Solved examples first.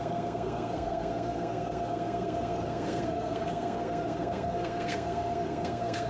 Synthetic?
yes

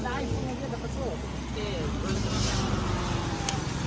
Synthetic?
no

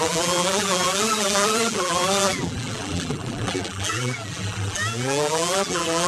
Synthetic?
yes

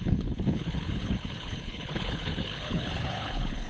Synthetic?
yes